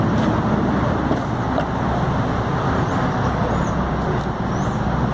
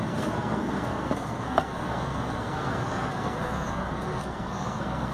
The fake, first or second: second